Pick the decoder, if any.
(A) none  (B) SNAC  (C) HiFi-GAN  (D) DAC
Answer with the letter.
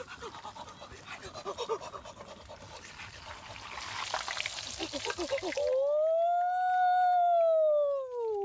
A